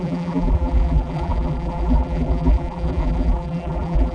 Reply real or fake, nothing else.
fake